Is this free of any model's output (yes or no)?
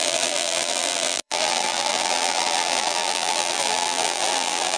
no